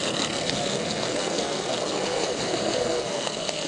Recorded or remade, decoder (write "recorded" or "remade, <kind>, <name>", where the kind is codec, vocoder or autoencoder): remade, codec, SNAC